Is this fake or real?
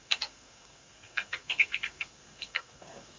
fake